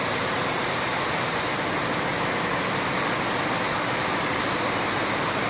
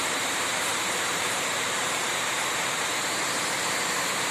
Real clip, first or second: first